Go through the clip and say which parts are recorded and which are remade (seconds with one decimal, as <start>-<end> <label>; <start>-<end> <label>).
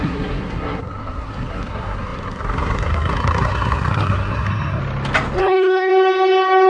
0.0-4.8 remade; 4.8-5.4 recorded; 5.4-5.9 remade; 5.9-6.7 recorded